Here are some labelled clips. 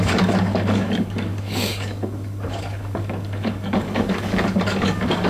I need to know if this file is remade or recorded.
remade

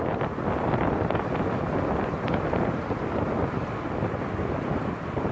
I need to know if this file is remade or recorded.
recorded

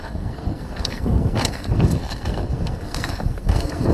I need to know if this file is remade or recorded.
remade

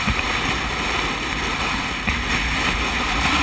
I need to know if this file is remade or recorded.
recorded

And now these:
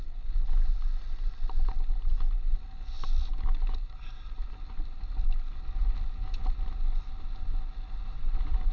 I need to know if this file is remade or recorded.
recorded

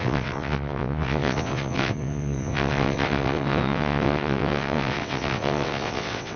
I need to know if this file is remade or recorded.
remade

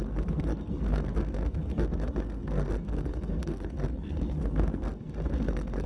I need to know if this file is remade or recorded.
remade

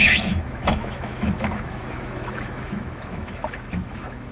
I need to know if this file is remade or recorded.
remade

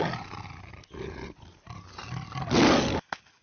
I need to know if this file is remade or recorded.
recorded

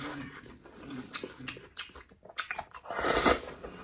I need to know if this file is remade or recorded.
recorded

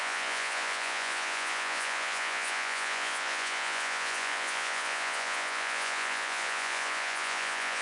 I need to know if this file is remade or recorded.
remade